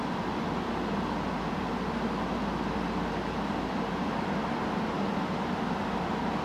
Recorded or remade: recorded